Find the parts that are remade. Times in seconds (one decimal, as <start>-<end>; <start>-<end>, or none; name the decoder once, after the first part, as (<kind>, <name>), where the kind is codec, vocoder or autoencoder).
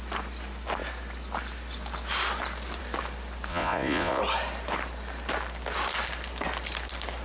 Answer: 3.5-4.2 (vocoder, Vocos)